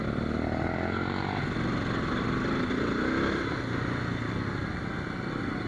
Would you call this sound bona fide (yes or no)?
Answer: yes